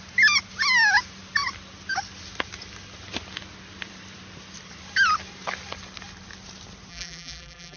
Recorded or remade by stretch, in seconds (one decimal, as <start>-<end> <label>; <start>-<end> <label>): 0.0-6.9 recorded; 6.9-7.8 remade